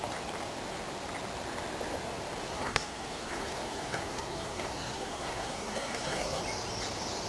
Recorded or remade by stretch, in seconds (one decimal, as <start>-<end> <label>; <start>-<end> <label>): 0.0-2.5 recorded; 2.5-6.4 remade; 6.4-7.3 recorded